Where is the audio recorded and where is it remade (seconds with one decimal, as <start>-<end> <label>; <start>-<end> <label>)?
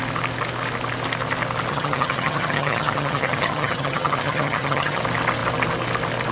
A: 0.0-1.7 recorded; 1.7-5.0 remade; 5.0-6.3 recorded